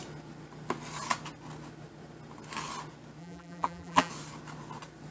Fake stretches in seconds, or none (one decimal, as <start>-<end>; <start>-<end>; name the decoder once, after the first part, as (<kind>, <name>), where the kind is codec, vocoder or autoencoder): 3.2-4.1 (vocoder, BigVGAN v2)